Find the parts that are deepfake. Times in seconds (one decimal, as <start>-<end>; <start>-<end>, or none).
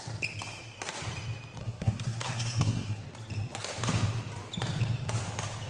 1.6-3.0